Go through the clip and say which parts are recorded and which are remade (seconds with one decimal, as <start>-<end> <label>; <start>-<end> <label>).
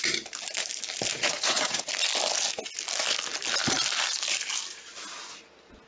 0.0-1.1 recorded; 1.1-1.9 remade; 1.9-5.9 recorded